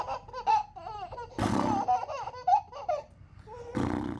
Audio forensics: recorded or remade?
recorded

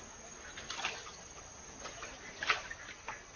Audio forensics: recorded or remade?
recorded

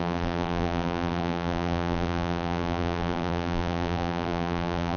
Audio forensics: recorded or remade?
remade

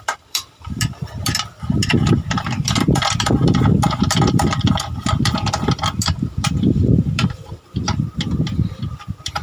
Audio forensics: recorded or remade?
remade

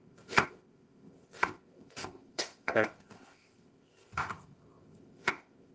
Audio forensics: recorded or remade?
remade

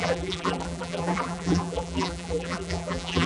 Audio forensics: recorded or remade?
remade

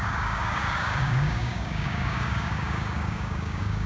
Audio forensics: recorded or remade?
remade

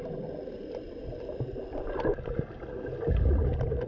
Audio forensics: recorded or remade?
recorded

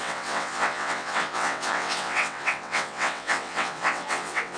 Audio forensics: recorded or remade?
remade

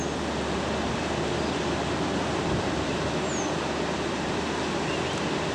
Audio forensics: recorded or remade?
recorded